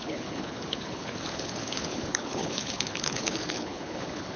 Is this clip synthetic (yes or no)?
yes